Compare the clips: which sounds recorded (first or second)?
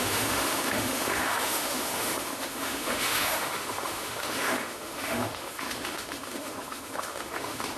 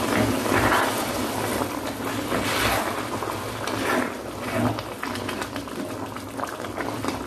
second